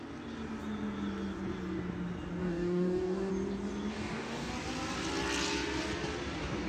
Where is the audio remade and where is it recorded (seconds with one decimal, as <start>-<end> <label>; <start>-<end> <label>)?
0.0-2.4 recorded; 2.4-3.3 remade; 3.3-3.9 recorded; 3.9-4.5 remade; 4.5-6.7 recorded

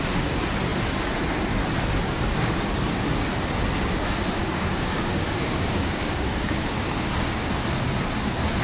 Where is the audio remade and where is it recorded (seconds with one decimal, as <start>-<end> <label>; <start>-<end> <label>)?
0.0-4.4 recorded; 4.4-7.1 remade; 7.1-8.6 recorded

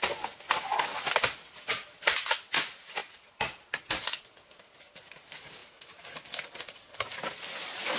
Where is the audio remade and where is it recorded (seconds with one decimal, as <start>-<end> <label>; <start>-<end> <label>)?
0.0-8.0 recorded

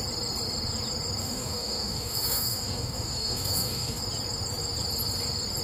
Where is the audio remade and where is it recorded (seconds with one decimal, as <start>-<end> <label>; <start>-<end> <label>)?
0.0-1.2 recorded; 1.2-4.0 remade; 4.0-5.6 recorded

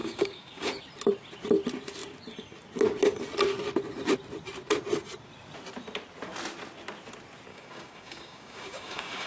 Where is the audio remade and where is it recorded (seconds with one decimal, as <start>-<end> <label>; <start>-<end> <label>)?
0.0-0.7 remade; 0.7-7.5 recorded; 7.5-9.3 remade

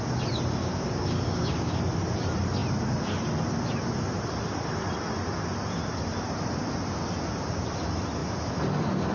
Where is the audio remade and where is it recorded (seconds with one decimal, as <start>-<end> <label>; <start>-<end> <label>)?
0.0-0.6 recorded; 0.6-1.8 remade; 1.8-9.1 recorded

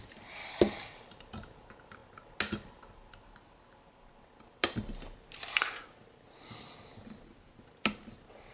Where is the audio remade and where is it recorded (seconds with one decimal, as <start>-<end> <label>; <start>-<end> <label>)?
0.0-8.5 recorded